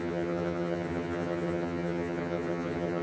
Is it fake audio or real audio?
fake